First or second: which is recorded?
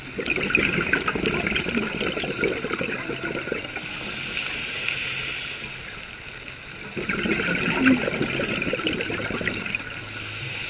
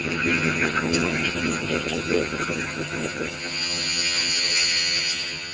first